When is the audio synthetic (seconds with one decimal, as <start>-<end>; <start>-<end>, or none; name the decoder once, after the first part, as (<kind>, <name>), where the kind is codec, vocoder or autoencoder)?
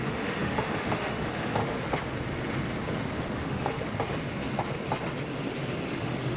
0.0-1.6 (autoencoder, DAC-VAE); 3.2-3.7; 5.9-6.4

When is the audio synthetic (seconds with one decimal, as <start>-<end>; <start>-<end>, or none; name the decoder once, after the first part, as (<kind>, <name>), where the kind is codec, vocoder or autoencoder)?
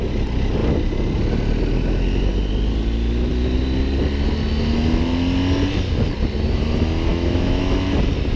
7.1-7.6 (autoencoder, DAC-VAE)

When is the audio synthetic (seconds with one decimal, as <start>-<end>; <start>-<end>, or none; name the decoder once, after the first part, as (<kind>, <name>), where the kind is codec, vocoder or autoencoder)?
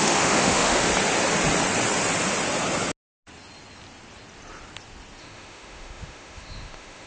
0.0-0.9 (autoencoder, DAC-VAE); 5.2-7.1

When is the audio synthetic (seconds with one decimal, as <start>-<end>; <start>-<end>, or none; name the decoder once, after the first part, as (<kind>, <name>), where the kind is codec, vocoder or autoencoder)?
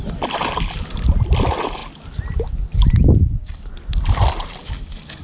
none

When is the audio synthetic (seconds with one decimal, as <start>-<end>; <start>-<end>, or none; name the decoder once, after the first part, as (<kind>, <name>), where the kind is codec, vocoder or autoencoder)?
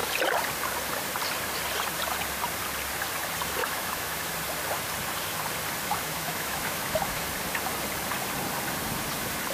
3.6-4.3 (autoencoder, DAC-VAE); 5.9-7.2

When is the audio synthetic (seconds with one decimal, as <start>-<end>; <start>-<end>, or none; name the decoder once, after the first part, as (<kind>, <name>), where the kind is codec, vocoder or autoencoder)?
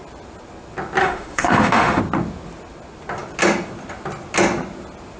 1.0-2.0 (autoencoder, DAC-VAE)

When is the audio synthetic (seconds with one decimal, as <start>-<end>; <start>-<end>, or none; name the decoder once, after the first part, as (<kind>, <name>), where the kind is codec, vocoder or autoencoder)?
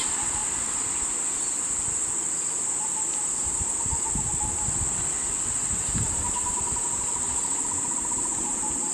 none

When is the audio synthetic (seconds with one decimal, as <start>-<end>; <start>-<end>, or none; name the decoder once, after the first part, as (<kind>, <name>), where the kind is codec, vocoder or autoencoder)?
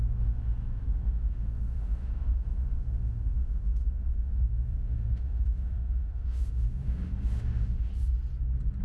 0.0-7.9 (autoencoder, DAC-VAE)